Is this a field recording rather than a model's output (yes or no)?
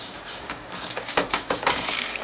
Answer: no